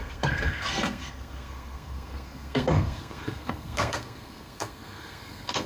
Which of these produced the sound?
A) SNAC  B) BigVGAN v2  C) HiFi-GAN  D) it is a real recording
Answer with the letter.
A